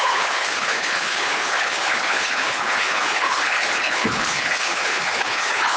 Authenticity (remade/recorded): remade